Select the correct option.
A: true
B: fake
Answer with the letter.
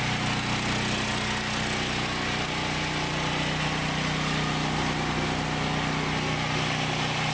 A